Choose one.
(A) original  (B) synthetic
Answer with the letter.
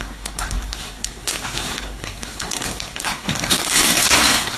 B